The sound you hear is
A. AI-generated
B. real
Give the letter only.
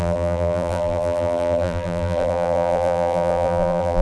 A